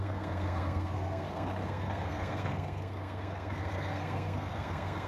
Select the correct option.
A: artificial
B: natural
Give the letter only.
A